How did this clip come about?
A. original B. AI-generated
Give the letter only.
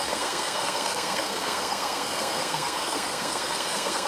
B